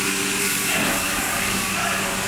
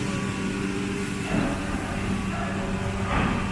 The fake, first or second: first